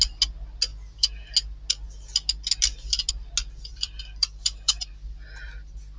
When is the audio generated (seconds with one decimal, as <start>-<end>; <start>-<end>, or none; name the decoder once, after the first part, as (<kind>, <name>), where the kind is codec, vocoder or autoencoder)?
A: 3.7-4.9 (vocoder, BigVGAN v2)